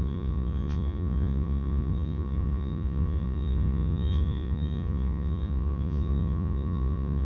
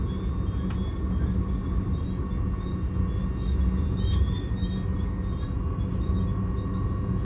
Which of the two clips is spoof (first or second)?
first